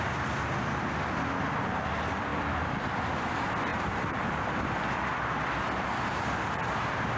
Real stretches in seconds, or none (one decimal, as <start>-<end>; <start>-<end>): 0.0-2.3; 3.1-3.7; 5.4-7.2